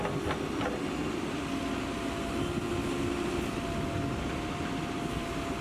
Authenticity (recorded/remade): recorded